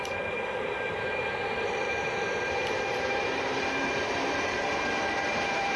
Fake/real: fake